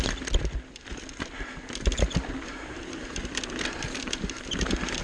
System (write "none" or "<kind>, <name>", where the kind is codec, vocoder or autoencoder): none